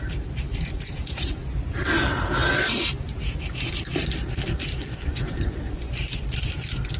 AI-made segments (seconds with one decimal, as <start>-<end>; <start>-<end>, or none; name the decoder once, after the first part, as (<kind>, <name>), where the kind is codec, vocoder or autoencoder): 4.8-6.0 (vocoder, Vocos)